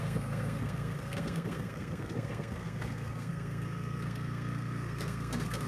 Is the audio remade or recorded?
remade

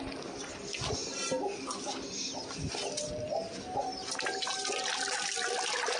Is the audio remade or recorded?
recorded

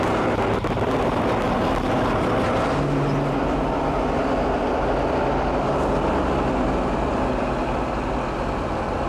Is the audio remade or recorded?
recorded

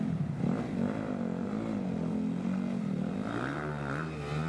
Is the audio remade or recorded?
recorded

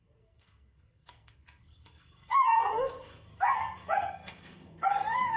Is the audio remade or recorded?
remade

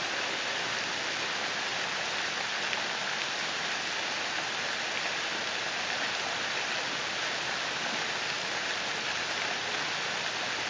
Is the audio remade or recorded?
recorded